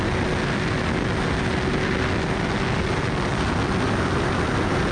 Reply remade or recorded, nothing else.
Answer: recorded